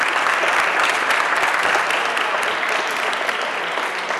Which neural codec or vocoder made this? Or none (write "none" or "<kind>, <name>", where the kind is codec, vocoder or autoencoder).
none